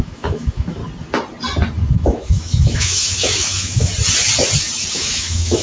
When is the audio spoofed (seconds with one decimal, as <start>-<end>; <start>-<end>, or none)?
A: 0.0-0.8; 1.9-3.9; 4.9-5.6